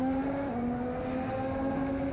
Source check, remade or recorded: recorded